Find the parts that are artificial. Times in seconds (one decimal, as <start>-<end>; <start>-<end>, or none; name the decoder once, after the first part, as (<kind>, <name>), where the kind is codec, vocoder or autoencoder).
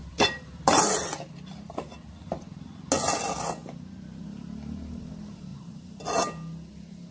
0.0-0.8 (vocoder, BigVGAN v2); 3.6-5.1; 5.5-6.0